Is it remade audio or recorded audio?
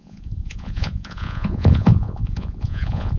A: remade